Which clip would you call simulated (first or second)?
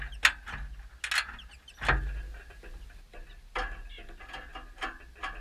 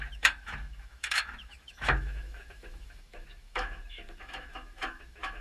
second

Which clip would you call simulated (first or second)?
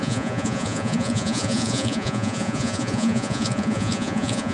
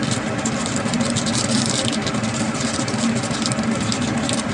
first